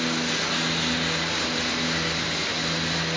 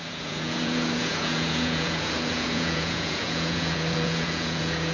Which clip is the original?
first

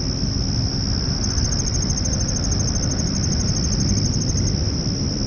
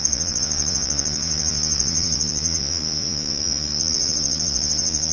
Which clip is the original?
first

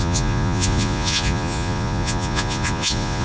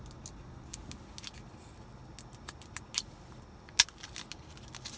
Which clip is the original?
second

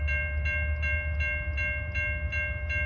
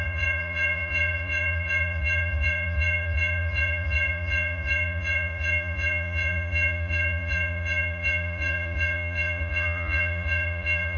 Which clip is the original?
first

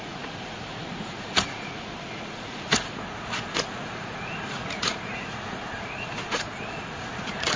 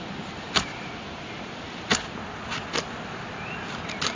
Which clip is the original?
second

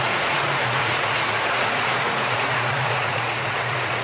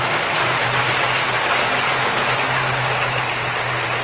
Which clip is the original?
second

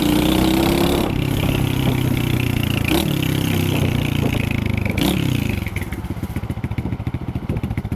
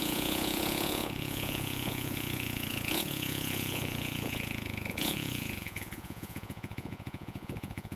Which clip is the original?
first